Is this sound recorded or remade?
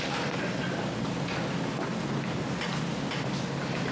recorded